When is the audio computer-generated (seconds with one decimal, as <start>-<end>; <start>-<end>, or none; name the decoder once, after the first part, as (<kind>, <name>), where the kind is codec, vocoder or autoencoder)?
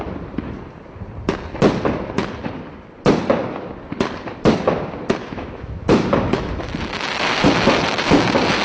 5.2-7.3 (autoencoder, DAC-VAE)